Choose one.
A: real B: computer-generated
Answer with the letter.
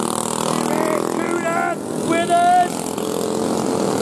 A